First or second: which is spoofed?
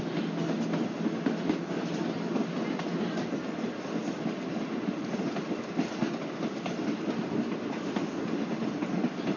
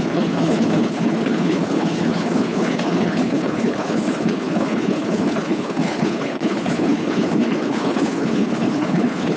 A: second